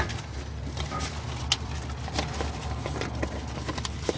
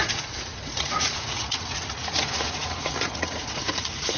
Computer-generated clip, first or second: second